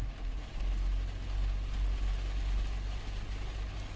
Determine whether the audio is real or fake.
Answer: real